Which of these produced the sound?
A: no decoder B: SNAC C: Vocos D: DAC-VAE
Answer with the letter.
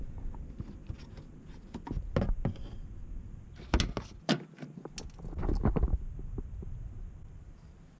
A